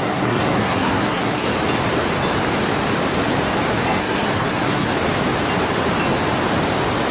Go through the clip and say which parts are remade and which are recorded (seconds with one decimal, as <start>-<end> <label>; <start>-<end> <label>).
0.0-1.5 remade; 1.5-4.0 recorded; 4.0-4.9 remade; 4.9-7.1 recorded